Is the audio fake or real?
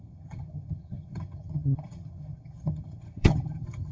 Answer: fake